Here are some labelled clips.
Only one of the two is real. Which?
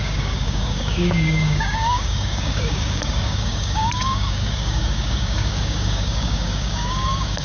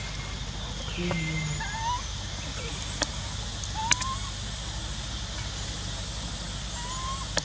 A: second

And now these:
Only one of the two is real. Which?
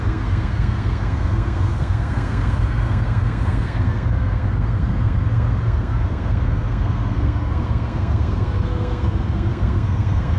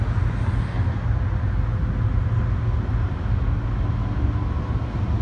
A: second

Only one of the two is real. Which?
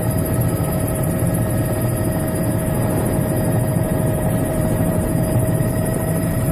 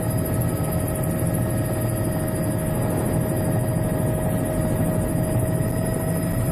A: second